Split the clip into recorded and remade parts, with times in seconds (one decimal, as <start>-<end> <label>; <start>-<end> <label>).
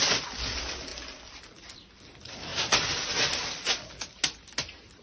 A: 0.0-5.0 recorded